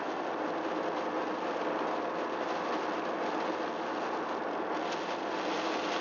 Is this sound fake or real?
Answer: real